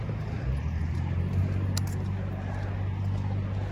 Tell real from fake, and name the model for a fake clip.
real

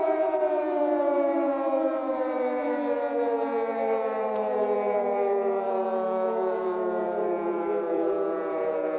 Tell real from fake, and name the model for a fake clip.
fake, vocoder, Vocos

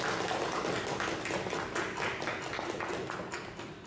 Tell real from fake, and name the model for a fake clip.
real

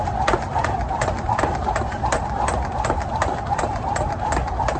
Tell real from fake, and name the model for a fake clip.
fake, vocoder, BigVGAN v2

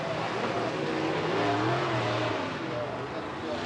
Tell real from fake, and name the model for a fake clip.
real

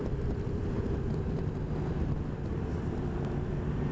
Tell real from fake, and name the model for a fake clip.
real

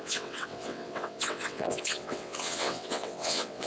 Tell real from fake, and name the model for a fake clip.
fake, vocoder, WaveNeXt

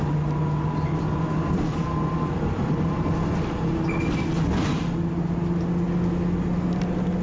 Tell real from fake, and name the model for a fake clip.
real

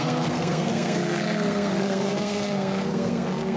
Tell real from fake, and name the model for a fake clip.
fake, codec, SNAC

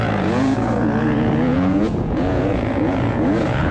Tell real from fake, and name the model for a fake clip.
fake, vocoder, Vocos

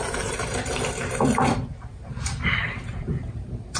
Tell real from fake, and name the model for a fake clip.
fake, vocoder, BigVGAN v2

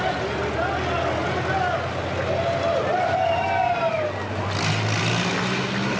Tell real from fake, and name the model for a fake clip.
real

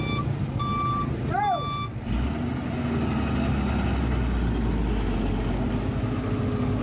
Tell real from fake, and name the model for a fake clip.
real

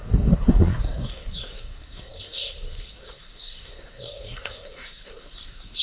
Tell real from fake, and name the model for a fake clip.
fake, codec, SNAC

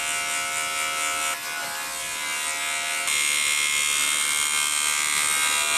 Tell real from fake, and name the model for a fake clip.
real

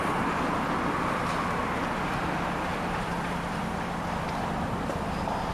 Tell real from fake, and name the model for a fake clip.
fake, vocoder, BigVGAN v2